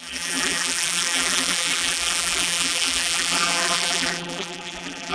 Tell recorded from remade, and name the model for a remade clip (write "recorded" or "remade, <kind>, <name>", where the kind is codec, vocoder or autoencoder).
remade, vocoder, BigVGAN v2